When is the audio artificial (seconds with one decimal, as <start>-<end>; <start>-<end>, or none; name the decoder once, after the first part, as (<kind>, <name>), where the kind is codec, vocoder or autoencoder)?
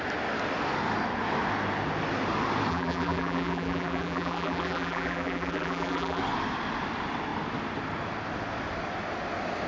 2.7-6.2 (vocoder, BigVGAN v2)